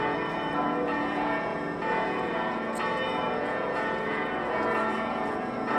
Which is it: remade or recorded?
remade